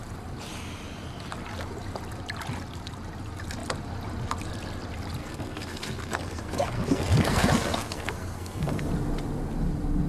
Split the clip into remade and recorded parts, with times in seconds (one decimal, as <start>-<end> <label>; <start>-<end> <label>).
0.0-5.2 recorded; 5.2-8.9 remade; 8.9-10.1 recorded